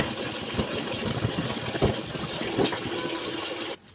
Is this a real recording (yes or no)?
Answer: yes